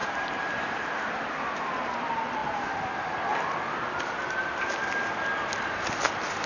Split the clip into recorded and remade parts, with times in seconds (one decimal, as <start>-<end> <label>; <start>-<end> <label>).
0.0-1.1 remade; 1.1-6.5 recorded